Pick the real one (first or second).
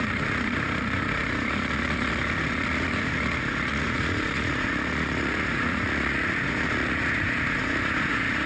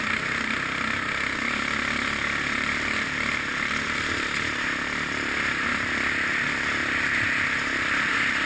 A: second